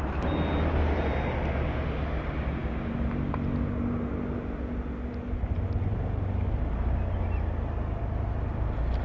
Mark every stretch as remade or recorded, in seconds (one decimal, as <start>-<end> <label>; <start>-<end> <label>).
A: 0.0-9.0 recorded